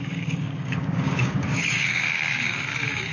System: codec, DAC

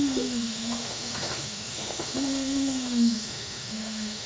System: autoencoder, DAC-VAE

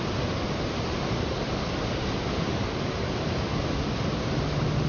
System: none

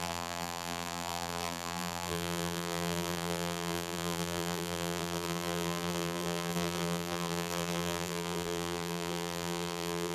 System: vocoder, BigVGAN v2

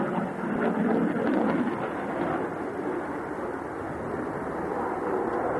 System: none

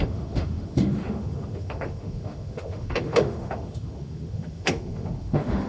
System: autoencoder, DAC-VAE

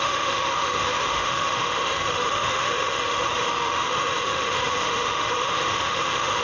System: autoencoder, DAC-VAE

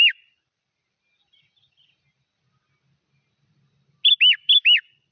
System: none